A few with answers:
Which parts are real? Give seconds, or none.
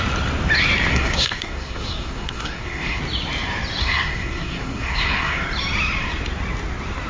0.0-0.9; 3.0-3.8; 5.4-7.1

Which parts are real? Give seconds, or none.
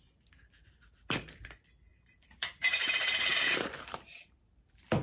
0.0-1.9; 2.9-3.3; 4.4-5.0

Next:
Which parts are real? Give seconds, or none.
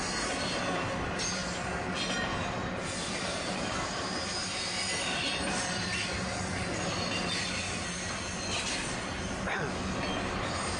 0.0-10.8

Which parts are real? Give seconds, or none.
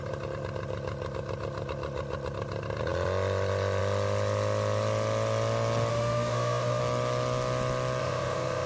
0.0-5.9; 6.8-8.0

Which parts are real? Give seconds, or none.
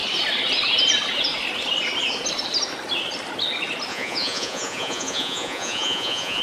0.0-3.9